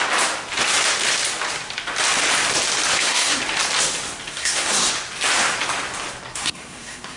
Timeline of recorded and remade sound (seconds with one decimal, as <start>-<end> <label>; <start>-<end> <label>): 0.0-2.9 recorded; 2.9-3.4 remade; 3.4-4.3 recorded; 4.3-4.9 remade; 4.9-6.3 recorded; 6.3-7.2 remade